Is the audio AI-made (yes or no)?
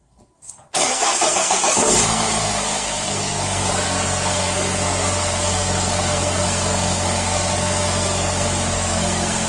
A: yes